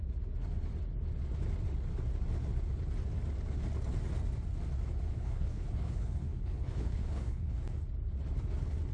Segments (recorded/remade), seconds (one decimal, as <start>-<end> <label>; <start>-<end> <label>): 0.0-5.1 recorded; 5.1-7.6 remade; 7.6-8.9 recorded